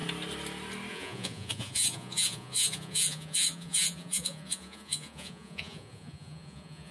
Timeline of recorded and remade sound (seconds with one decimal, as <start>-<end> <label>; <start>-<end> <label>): 0.0-0.9 recorded; 0.9-6.9 remade